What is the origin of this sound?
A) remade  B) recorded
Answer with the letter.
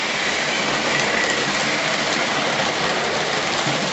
B